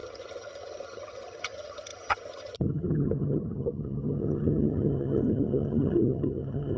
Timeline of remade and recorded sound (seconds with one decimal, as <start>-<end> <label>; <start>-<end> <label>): 0.0-6.8 remade